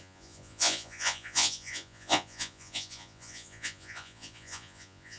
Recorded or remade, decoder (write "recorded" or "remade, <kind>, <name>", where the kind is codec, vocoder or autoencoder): remade, vocoder, Vocos